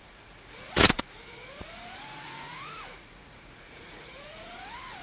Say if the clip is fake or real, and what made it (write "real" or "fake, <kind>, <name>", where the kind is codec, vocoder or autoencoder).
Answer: fake, vocoder, Vocos